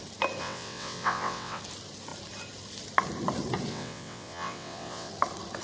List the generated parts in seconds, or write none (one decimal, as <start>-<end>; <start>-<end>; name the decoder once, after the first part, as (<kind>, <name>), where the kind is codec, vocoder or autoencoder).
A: 0.4-1.6 (vocoder, WaveNeXt); 3.7-5.1